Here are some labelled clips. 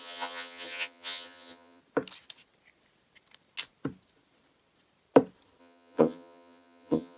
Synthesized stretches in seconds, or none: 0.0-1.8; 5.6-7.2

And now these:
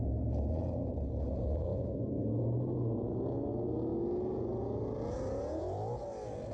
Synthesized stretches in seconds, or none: 1.7-2.4

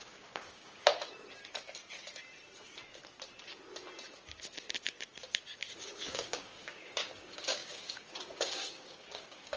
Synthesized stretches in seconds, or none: 0.0-0.9; 5.7-9.6

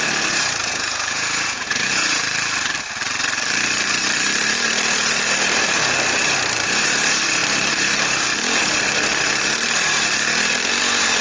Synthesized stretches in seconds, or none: 0.6-2.2